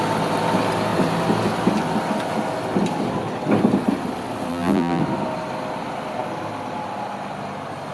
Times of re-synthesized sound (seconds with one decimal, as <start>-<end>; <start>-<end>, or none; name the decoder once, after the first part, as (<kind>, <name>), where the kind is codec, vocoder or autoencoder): 4.5-5.0 (vocoder, BigVGAN v2)